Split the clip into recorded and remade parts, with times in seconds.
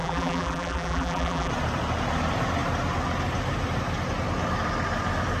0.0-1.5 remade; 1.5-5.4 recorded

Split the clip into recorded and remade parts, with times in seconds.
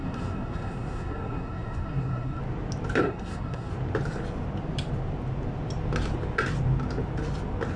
0.0-2.4 remade; 2.4-3.0 recorded; 3.0-3.7 remade; 3.7-7.8 recorded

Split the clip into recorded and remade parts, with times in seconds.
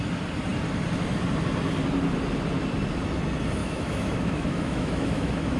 0.0-3.6 recorded; 3.6-5.6 remade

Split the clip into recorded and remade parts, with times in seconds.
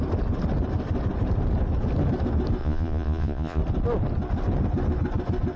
0.0-2.6 recorded; 2.6-3.6 remade; 3.6-5.6 recorded